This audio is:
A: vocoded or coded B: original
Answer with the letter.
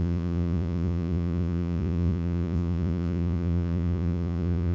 A